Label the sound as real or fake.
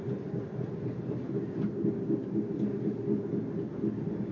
real